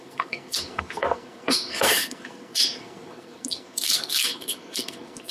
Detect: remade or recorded remade